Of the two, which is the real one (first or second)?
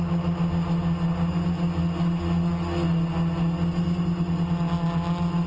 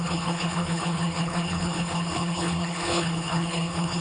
first